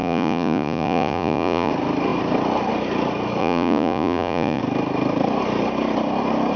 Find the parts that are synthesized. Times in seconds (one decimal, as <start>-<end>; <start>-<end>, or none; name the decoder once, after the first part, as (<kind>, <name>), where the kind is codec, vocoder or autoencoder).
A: 0.0-1.7 (vocoder, Vocos); 3.4-4.6